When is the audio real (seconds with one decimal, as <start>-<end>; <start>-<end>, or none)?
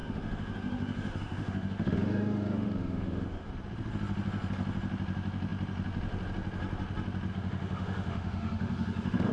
3.5-7.3